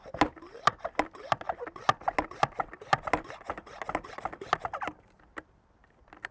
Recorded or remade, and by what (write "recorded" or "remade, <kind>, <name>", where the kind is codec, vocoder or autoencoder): recorded